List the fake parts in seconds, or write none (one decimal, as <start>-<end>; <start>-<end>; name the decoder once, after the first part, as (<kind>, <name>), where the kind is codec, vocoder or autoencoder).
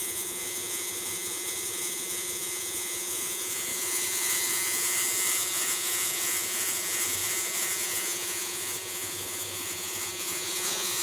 0.0-11.0 (vocoder, Vocos)